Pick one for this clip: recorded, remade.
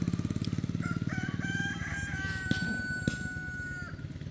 recorded